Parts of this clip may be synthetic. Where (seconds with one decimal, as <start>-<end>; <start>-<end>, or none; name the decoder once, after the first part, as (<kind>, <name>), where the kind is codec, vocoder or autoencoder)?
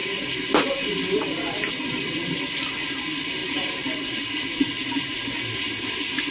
none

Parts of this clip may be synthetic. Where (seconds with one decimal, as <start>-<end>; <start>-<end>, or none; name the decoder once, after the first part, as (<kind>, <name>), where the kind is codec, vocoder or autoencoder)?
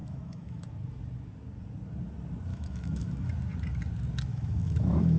0.0-0.7 (autoencoder, DAC-VAE); 2.5-3.3; 4.3-5.2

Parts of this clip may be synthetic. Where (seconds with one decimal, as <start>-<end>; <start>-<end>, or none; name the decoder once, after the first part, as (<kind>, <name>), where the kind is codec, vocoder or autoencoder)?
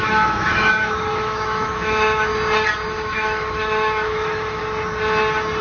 0.0-2.3 (autoencoder, DAC-VAE); 2.9-4.6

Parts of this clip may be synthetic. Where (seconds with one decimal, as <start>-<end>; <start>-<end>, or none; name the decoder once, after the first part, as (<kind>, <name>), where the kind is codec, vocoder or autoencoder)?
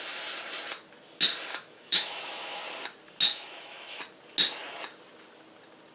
1.5-2.6 (autoencoder, DAC-VAE); 3.3-4.0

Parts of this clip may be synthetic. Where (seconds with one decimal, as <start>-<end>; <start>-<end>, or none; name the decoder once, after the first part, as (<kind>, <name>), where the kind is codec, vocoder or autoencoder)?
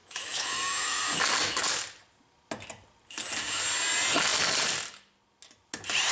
0.0-1.0 (autoencoder, DAC-VAE)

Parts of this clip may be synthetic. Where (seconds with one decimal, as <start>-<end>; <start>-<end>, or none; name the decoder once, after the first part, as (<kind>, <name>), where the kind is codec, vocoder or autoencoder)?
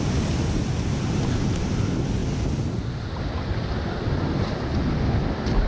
none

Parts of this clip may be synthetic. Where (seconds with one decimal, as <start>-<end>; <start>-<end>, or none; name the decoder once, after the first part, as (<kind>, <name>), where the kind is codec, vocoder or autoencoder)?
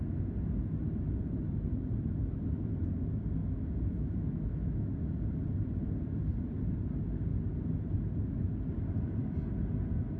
3.4-4.9 (autoencoder, DAC-VAE)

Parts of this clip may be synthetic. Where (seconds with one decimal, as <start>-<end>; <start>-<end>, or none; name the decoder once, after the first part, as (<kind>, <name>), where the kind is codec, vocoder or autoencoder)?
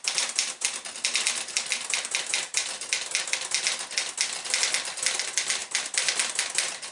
none